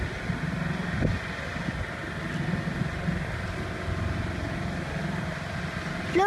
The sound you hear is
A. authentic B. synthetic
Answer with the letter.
A